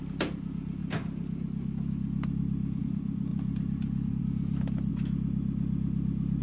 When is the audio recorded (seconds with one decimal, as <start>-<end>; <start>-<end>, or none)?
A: 0.8-2.8; 4.9-6.4